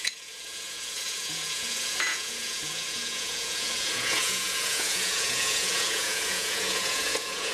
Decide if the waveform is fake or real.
fake